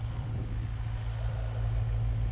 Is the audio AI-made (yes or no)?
no